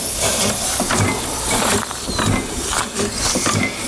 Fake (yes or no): no